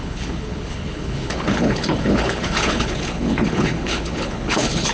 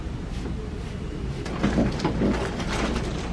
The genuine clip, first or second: second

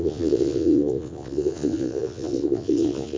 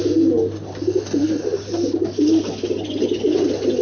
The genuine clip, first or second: second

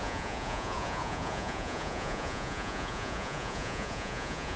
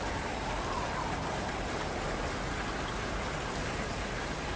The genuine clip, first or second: second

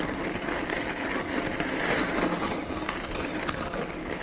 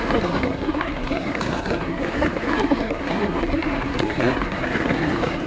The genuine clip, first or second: first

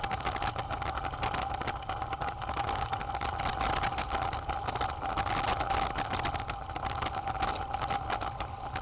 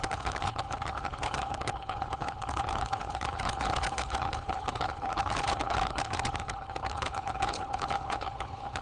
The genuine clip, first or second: first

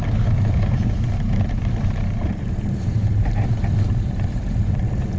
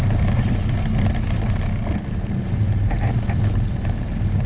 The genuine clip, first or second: second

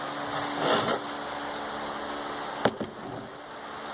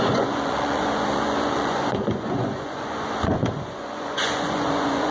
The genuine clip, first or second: first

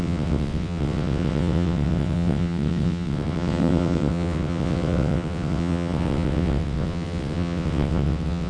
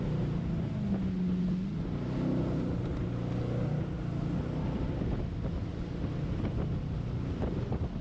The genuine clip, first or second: second